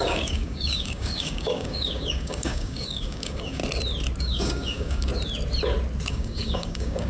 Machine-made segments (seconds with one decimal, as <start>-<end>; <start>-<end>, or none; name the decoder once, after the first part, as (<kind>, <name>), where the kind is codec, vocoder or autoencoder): 0.0-3.6 (codec, DAC); 4.2-5.1; 6.1-7.1